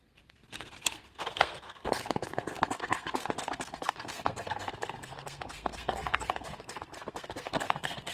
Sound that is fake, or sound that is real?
fake